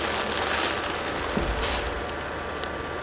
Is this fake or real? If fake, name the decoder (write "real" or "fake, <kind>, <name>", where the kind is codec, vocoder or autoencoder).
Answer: real